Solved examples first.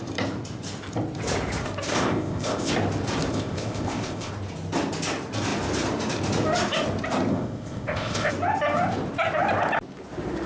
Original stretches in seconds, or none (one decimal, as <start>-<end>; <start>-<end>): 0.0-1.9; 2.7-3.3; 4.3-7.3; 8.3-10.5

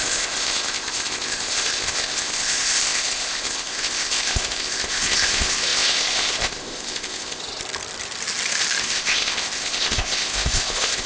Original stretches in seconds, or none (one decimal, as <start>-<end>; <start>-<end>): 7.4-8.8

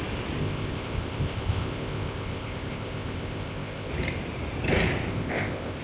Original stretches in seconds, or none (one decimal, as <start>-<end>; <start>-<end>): 0.0-0.4; 3.9-5.1

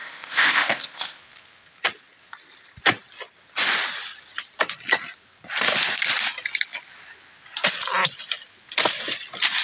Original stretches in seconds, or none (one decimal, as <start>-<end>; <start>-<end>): 1.2-9.6

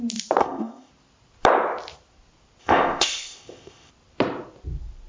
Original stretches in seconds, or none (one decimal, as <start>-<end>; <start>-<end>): 0.0-0.4; 0.9-2.6; 3.9-5.1